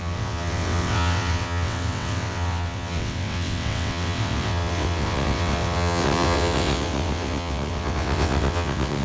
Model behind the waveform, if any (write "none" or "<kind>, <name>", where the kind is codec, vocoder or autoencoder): vocoder, WaveNeXt